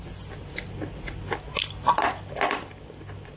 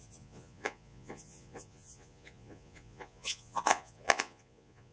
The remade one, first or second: second